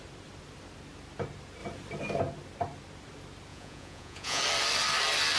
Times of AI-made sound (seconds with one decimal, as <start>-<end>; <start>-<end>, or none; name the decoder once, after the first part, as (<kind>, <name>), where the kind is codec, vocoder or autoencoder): 3.5-4.4 (vocoder, Vocos)